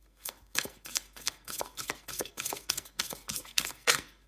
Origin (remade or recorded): remade